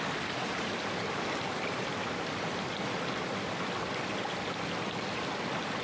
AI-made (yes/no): no